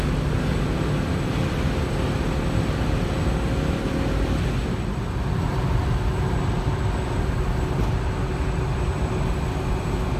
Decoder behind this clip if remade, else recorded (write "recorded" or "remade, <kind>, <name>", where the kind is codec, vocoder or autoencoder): recorded